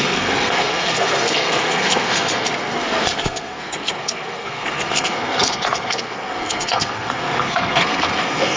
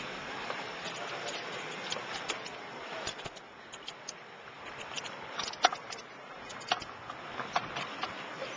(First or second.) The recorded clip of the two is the second